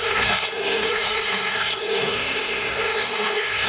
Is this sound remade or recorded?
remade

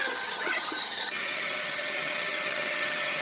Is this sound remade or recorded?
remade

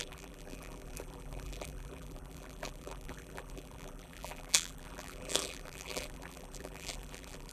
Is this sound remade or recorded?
remade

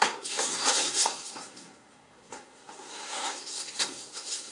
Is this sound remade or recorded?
remade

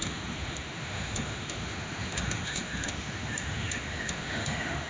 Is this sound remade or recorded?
remade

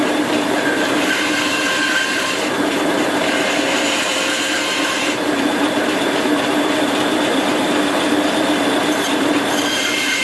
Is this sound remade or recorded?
remade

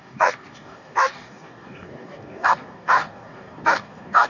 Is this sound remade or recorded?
remade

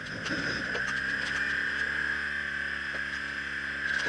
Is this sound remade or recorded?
recorded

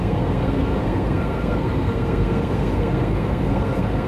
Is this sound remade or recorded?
remade